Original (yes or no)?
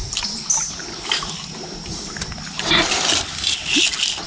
yes